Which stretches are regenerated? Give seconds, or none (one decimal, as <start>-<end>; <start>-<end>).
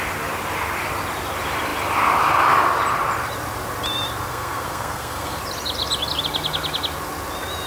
4.3-5.4